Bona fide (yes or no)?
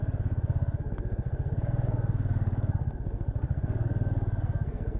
no